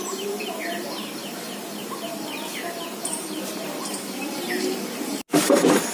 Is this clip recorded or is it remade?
remade